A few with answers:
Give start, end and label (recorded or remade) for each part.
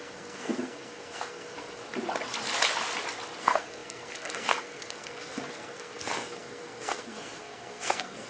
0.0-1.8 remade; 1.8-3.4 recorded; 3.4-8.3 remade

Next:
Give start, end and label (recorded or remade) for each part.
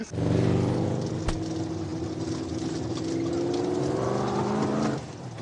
0.0-5.4 recorded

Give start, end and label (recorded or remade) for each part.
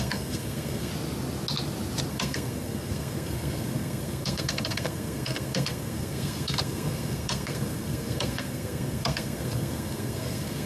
0.0-0.9 remade; 0.9-2.1 recorded; 2.1-10.7 remade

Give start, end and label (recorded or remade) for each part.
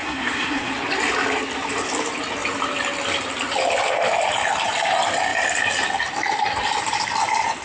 0.0-0.7 remade; 0.7-7.6 recorded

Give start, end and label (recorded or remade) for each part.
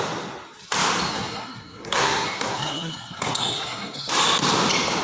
0.0-1.1 recorded; 1.1-4.1 remade; 4.1-5.0 recorded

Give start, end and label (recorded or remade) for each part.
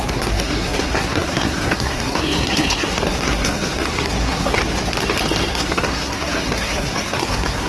0.0-4.6 remade; 4.6-5.5 recorded; 5.5-7.7 remade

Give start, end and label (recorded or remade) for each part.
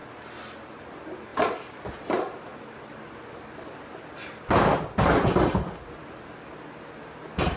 0.0-7.6 recorded